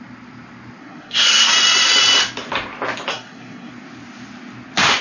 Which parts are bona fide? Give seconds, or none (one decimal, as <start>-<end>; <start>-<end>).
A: 0.0-0.8; 1.5-3.1; 3.7-5.0